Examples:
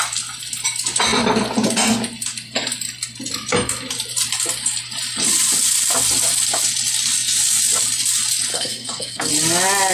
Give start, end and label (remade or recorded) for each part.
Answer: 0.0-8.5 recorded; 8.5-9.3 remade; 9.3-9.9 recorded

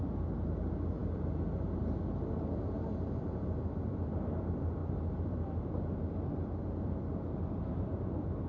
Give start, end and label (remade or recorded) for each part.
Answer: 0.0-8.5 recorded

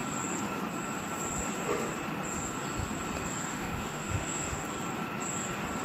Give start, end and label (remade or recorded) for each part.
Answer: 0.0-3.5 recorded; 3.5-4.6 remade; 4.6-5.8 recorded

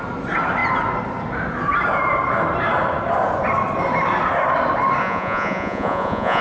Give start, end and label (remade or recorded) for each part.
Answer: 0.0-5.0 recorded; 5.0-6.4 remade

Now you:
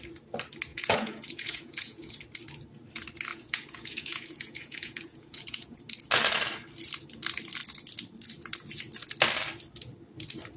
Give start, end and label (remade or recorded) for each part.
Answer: 0.0-0.7 recorded; 0.7-2.2 remade; 2.2-3.3 recorded; 3.3-5.8 remade; 5.8-10.6 recorded